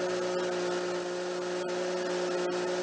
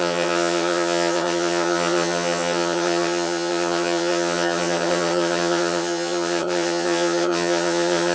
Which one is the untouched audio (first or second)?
first